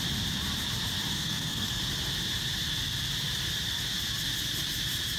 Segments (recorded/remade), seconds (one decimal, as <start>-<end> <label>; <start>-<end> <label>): 0.0-1.1 recorded; 1.1-1.8 remade; 1.8-5.2 recorded

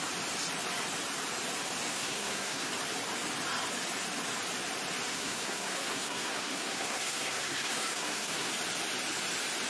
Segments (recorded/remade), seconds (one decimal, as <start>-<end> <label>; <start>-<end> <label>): 0.0-1.9 recorded; 1.9-2.7 remade; 2.7-5.1 recorded; 5.1-8.5 remade; 8.5-9.7 recorded

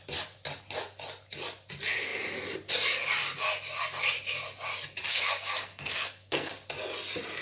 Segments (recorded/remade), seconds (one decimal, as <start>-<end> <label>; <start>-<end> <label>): 0.0-5.1 recorded; 5.1-6.5 remade; 6.5-7.4 recorded

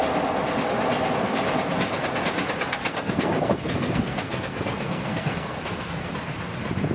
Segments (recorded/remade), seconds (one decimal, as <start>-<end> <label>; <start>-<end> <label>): 0.0-2.7 recorded; 2.7-6.1 remade; 6.1-6.9 recorded